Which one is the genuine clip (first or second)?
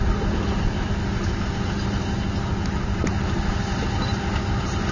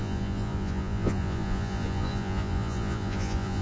first